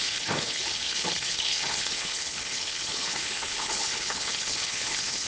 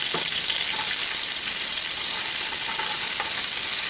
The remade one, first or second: first